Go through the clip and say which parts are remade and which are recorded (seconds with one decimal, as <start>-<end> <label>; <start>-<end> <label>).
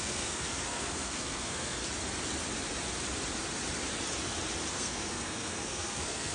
0.0-1.8 remade; 1.8-4.7 recorded; 4.7-6.3 remade